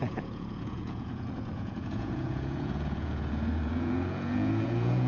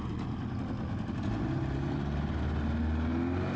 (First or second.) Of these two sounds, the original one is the second